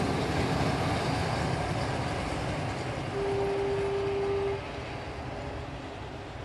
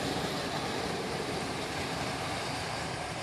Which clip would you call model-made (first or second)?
second